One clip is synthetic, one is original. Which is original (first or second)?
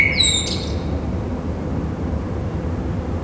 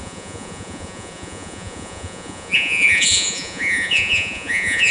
first